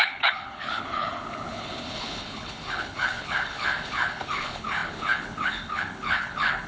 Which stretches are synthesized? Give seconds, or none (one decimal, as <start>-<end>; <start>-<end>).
0.0-6.7